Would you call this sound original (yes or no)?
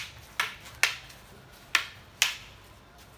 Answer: yes